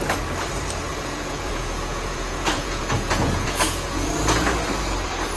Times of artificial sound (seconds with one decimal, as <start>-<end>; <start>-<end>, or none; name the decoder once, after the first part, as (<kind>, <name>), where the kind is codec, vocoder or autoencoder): 0.9-4.1 (vocoder, Vocos)